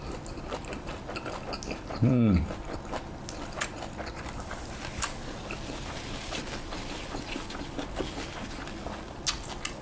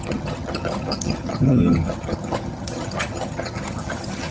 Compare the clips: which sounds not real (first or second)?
second